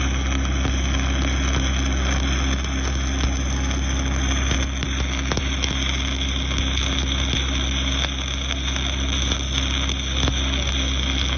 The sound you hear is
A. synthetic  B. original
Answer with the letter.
B